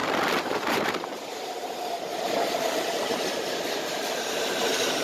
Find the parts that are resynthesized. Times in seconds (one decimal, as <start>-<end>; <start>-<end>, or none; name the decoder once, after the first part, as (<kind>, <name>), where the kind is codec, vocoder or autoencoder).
0.7-2.1 (vocoder, BigVGAN v2); 2.6-5.0